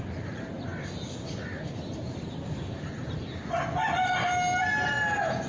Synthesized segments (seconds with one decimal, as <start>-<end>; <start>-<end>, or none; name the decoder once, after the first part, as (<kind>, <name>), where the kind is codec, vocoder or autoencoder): none